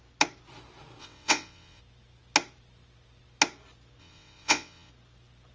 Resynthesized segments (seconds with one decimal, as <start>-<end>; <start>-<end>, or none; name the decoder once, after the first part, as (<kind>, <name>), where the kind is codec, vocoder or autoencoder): 1.0-1.8 (vocoder, WaveNeXt); 4.0-4.9